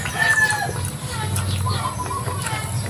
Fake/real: real